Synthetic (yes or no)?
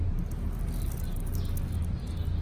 no